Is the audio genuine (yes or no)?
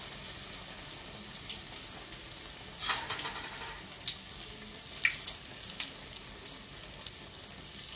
yes